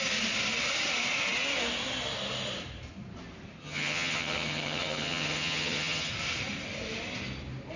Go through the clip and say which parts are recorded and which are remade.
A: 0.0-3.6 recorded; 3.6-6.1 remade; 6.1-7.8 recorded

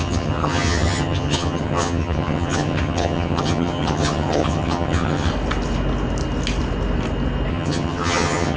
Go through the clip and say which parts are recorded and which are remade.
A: 0.0-5.3 remade; 5.3-7.5 recorded; 7.5-8.6 remade

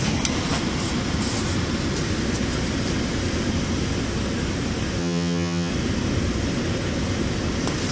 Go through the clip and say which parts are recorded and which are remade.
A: 0.0-5.0 recorded; 5.0-5.7 remade; 5.7-7.9 recorded

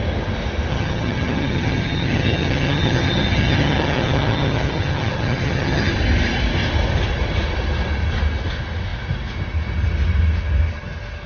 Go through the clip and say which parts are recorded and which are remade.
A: 0.0-0.7 recorded; 0.7-5.9 remade; 5.9-11.3 recorded

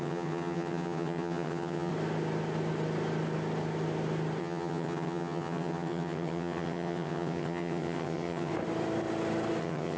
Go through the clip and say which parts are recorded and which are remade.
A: 0.0-1.9 remade; 1.9-4.4 recorded; 4.4-8.5 remade; 8.5-9.6 recorded; 9.6-10.0 remade

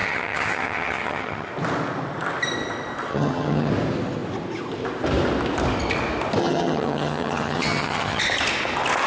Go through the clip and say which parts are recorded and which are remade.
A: 0.0-1.5 remade; 1.5-3.1 recorded; 3.1-3.7 remade; 3.7-6.4 recorded; 6.4-8.2 remade; 8.2-9.1 recorded